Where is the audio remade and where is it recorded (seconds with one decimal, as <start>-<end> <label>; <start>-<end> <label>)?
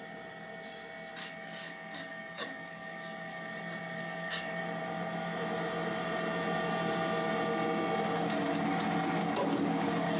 0.0-1.2 recorded; 1.2-3.5 remade; 3.5-4.0 recorded; 4.0-4.6 remade; 4.6-9.2 recorded; 9.2-10.2 remade